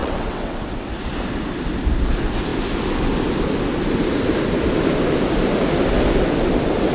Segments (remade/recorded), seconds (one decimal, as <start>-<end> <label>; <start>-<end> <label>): 0.0-0.9 remade; 0.9-6.9 recorded